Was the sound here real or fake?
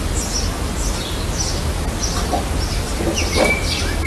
real